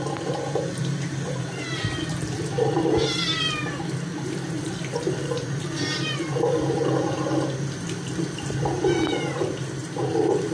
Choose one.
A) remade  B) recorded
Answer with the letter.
A